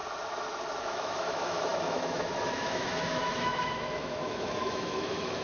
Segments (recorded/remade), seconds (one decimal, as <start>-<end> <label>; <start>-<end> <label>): 0.0-0.8 recorded; 0.8-5.4 remade